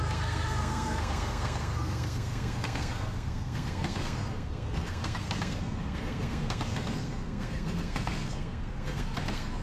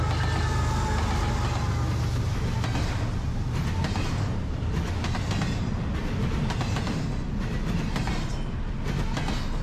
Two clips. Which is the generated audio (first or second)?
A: first